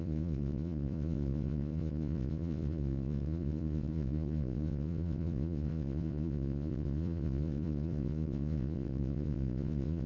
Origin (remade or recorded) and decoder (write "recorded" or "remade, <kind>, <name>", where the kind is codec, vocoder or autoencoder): remade, vocoder, Vocos